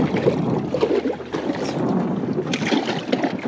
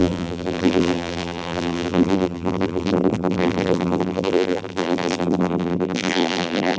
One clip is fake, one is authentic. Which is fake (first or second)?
second